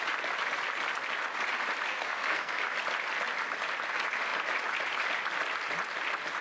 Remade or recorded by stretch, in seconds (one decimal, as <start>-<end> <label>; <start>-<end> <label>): 0.0-1.9 recorded; 1.9-2.6 remade; 2.6-6.4 recorded